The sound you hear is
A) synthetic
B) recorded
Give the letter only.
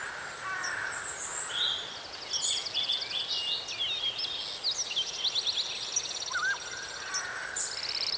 B